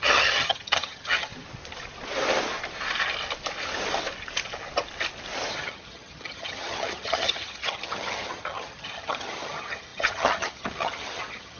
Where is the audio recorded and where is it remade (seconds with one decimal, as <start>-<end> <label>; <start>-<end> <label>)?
0.0-1.3 remade; 1.3-5.5 recorded; 5.5-11.6 remade